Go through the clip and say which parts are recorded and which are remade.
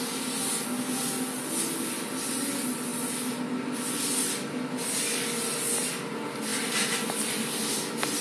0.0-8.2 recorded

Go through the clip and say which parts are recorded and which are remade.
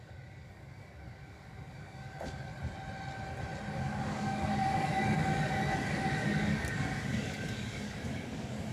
0.0-2.5 remade; 2.5-3.7 recorded; 3.7-8.7 remade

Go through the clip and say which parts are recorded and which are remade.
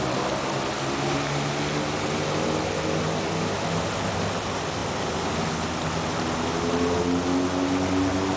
0.0-8.4 recorded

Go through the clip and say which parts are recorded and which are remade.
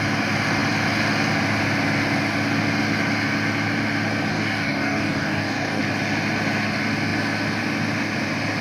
0.0-4.3 recorded; 4.3-5.8 remade; 5.8-8.6 recorded